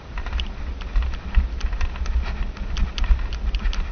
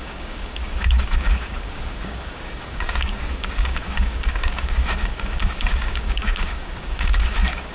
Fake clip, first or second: second